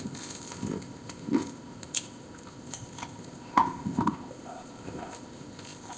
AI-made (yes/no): yes